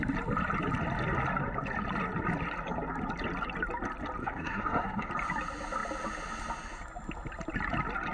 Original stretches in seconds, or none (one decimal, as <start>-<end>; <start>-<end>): 0.0-4.2; 5.1-8.1